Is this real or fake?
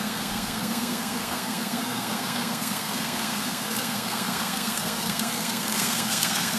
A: fake